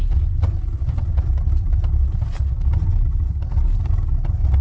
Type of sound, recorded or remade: recorded